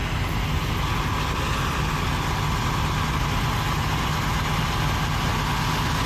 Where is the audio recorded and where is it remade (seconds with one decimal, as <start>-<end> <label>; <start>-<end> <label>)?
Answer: 0.0-6.1 recorded